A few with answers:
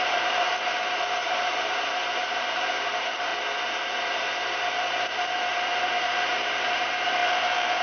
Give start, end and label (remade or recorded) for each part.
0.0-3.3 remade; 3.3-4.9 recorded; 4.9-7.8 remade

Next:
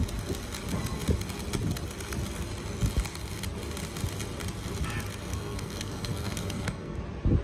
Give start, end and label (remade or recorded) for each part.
0.0-5.3 recorded; 5.3-7.0 remade; 7.0-7.4 recorded

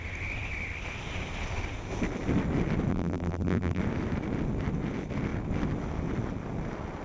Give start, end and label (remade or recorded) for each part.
0.0-2.9 recorded; 2.9-3.8 remade; 3.8-7.0 recorded